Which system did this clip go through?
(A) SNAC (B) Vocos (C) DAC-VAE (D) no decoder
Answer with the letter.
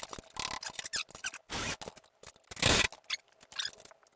D